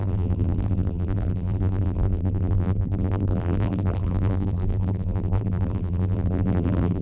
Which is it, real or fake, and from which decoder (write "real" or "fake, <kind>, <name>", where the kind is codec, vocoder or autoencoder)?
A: fake, vocoder, BigVGAN v2